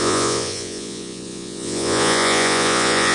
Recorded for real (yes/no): no